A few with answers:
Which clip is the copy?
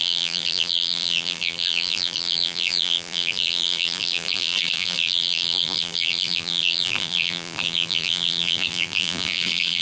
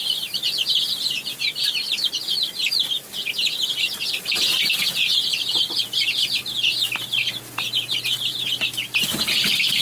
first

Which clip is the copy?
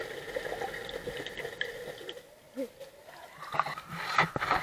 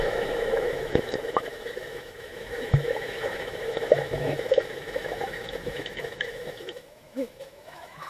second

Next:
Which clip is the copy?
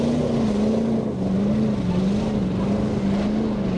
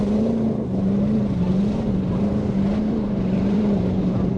second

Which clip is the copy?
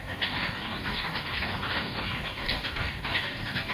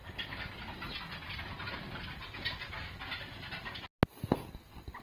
first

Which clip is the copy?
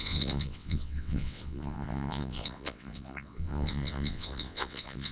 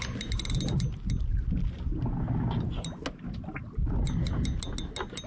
first